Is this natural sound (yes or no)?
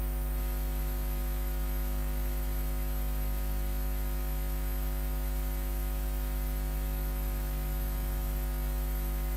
no